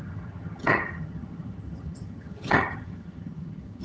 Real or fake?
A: fake